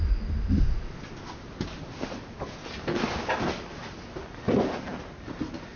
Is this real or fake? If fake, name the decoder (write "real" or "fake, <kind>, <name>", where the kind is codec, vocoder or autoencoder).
real